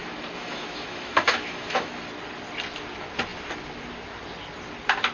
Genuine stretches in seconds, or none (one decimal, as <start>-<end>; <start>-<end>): 1.9-5.1